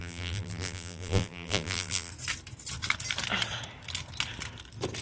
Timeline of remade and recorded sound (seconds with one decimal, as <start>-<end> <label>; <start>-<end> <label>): 0.0-2.1 remade; 2.1-5.0 recorded